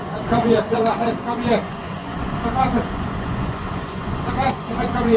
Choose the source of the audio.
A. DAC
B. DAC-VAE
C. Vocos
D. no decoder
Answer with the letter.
C